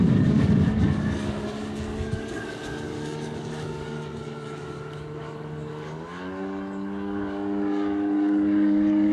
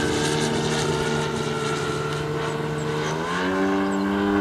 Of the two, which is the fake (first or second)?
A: first